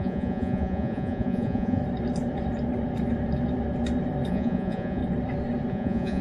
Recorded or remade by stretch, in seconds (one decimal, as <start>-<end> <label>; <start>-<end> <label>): 0.0-1.8 remade; 1.8-4.3 recorded; 4.3-5.0 remade; 5.0-5.7 recorded; 5.7-6.2 remade